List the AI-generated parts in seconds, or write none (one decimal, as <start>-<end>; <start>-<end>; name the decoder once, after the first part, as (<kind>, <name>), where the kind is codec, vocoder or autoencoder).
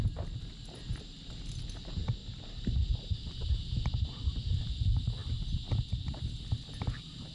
2.2-4.7 (vocoder, BigVGAN v2)